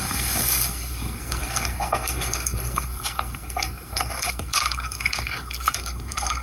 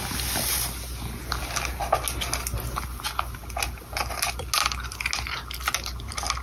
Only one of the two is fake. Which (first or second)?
first